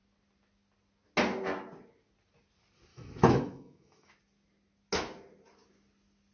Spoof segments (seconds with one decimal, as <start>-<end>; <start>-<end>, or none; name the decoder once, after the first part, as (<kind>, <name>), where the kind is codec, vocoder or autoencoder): 2.9-4.1 (autoencoder, DAC-VAE)